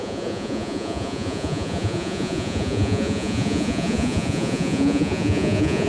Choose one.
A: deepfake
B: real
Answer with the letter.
A